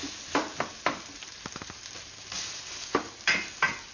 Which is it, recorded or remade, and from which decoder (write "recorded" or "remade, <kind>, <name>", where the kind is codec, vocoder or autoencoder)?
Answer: recorded